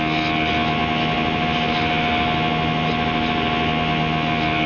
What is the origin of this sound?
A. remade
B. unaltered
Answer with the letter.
B